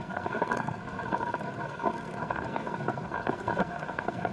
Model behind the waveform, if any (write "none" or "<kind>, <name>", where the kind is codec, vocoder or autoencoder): codec, SNAC